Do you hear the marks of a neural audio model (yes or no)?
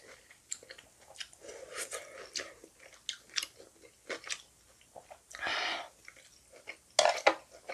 no